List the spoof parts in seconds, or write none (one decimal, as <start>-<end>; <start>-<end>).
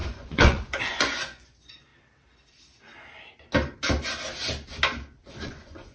0.0-1.9; 5.3-5.9